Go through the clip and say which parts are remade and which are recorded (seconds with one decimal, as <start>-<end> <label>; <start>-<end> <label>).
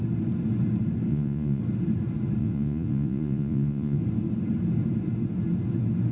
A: 0.0-1.1 recorded; 1.1-1.6 remade; 1.6-2.4 recorded; 2.4-4.0 remade; 4.0-6.1 recorded